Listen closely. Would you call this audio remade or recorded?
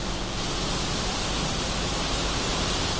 recorded